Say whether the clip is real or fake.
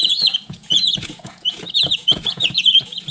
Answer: fake